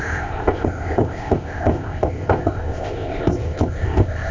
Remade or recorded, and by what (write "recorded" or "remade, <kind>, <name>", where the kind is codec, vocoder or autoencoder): remade, codec, ZipCodec